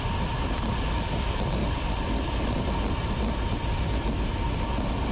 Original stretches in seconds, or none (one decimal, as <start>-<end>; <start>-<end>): 0.0-1.6; 2.4-5.1